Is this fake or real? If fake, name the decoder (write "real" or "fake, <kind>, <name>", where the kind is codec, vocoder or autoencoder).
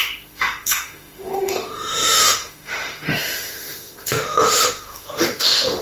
fake, autoencoder, DAC-VAE